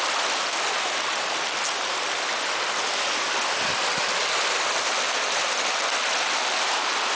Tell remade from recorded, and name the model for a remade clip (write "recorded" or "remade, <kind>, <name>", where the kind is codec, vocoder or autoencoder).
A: recorded